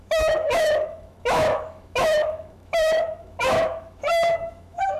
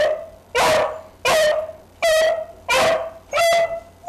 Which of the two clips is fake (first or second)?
first